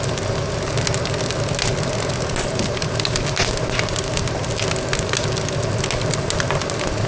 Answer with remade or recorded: recorded